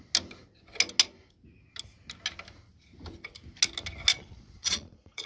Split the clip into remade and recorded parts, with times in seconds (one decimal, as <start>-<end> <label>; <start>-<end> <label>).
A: 0.0-4.1 recorded; 4.1-5.3 remade